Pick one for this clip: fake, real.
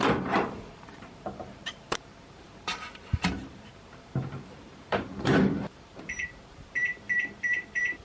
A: fake